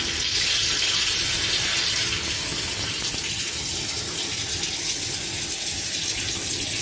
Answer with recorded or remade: recorded